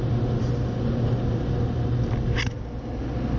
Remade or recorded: recorded